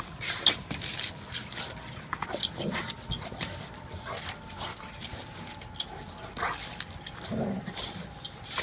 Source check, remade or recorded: recorded